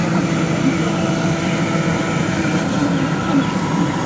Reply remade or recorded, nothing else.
recorded